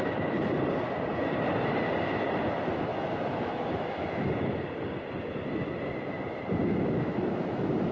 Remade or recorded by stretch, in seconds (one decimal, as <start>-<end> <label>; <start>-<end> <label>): 0.0-2.9 recorded; 2.9-4.3 remade; 4.3-6.6 recorded; 6.6-7.9 remade